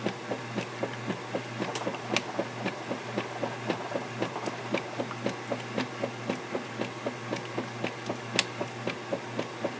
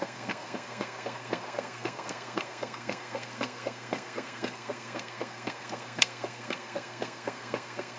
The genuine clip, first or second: first